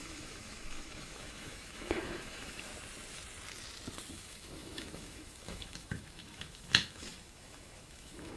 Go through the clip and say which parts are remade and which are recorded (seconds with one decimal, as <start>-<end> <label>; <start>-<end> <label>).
0.0-2.7 remade; 2.7-4.1 recorded; 4.1-8.4 remade